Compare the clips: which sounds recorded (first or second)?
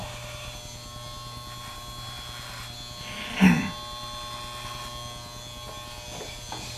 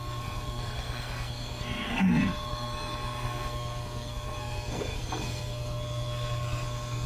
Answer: first